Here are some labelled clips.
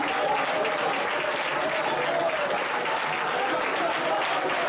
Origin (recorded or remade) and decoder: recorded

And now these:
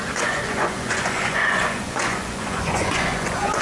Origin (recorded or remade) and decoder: remade, vocoder, Vocos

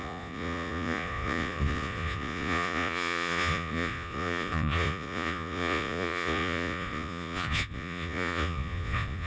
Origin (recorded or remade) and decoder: remade, vocoder, Vocos